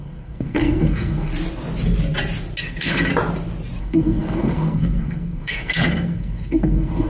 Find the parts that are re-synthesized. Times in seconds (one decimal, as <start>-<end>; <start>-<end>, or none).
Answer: 0.0-1.3; 2.6-3.1; 3.8-7.1